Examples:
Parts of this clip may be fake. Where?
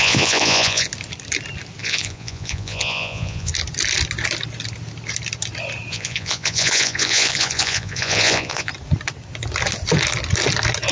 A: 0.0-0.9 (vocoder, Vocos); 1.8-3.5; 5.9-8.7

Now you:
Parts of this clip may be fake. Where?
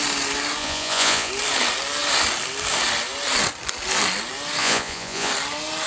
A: 0.6-1.3 (vocoder, Vocos); 4.6-5.3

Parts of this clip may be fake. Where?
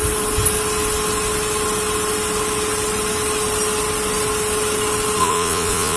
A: 5.2-6.0 (vocoder, Vocos)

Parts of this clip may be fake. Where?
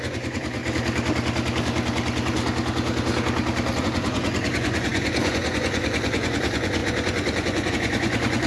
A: 0.0-0.6 (vocoder, Vocos); 3.8-8.5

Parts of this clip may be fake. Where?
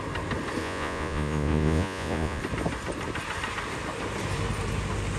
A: 0.6-2.4 (vocoder, Vocos)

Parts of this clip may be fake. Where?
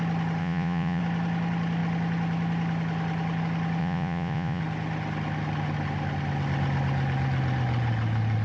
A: 0.4-1.0 (vocoder, Vocos); 3.8-4.6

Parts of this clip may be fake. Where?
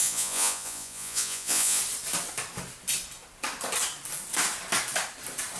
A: 0.0-1.8 (vocoder, Vocos)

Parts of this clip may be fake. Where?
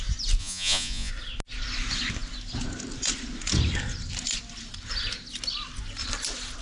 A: 0.4-1.1 (vocoder, Vocos)